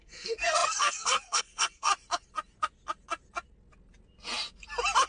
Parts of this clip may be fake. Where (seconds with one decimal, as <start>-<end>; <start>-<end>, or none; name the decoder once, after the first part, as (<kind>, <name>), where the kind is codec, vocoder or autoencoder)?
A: 0.0-1.9 (codec, SNAC)